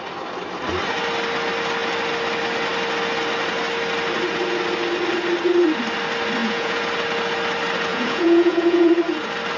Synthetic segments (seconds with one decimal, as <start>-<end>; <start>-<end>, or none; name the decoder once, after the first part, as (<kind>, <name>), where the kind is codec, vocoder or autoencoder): 6.4-6.9 (vocoder, Vocos); 7.9-8.9